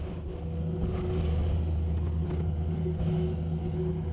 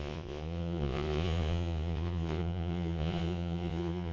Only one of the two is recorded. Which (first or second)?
first